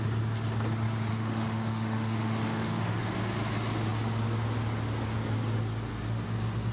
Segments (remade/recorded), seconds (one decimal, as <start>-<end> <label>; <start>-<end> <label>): 0.0-1.1 recorded; 1.1-3.0 remade; 3.0-6.7 recorded